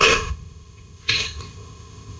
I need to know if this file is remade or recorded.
remade